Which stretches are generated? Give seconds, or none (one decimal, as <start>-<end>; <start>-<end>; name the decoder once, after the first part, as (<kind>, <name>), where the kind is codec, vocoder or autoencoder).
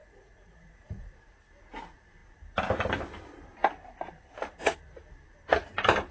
0.0-1.1 (vocoder, Vocos)